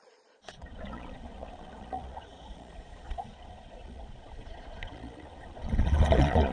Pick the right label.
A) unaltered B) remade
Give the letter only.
B